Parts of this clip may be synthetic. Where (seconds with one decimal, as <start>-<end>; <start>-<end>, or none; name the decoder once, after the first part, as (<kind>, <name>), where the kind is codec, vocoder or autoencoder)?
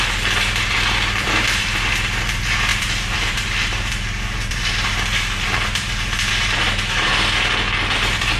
0.0-7.1 (vocoder, BigVGAN v2); 7.9-8.4